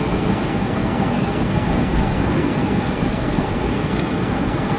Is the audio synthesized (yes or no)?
yes